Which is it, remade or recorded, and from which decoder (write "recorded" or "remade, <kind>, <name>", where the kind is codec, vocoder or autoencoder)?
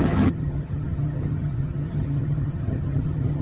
remade, vocoder, HiFi-GAN